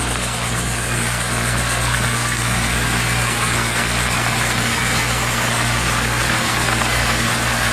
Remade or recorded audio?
remade